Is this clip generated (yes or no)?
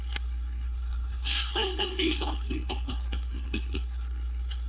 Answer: yes